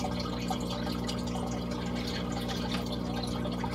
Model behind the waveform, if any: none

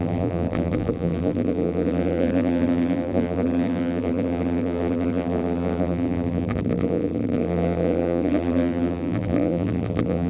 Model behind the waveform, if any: vocoder, BigVGAN v2